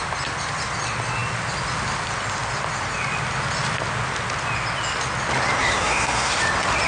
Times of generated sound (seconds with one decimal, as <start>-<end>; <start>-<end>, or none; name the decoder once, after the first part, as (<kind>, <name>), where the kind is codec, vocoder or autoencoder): 5.6-6.3 (codec, SNAC)